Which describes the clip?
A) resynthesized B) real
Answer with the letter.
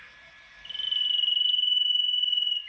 B